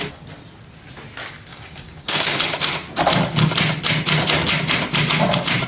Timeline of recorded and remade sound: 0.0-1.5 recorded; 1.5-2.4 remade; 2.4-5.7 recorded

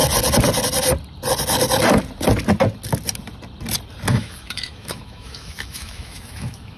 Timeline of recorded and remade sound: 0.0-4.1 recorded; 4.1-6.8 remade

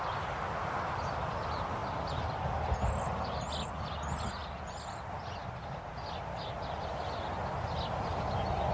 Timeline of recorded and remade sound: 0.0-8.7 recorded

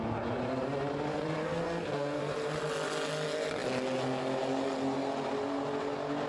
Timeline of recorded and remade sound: 0.0-1.4 recorded; 1.4-2.2 remade; 2.2-6.3 recorded

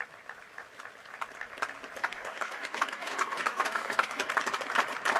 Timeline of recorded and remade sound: 0.0-2.0 recorded; 2.0-4.3 remade; 4.3-5.2 recorded

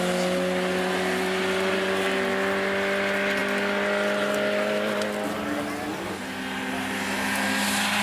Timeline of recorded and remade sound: 0.0-8.0 recorded